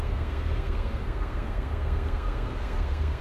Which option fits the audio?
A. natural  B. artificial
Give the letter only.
B